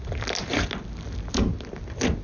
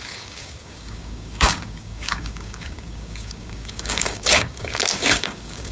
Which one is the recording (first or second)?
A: first